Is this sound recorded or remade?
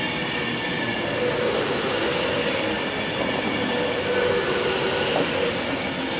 recorded